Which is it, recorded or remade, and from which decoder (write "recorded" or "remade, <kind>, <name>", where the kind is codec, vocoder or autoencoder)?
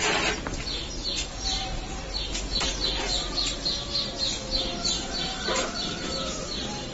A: recorded